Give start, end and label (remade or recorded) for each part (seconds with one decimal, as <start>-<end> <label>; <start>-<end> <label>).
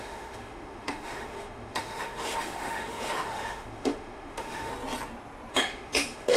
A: 0.0-4.7 remade; 4.7-5.5 recorded; 5.5-6.4 remade